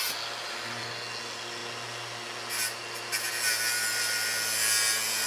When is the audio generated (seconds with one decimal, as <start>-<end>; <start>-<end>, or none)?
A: none